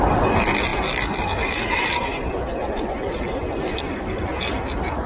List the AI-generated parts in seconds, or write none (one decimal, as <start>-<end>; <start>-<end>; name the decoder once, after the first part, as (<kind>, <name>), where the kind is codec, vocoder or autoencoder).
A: none